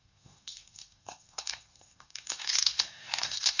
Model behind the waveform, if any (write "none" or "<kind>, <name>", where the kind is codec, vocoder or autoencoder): codec, SNAC